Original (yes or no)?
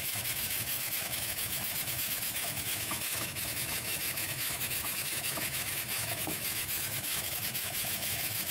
no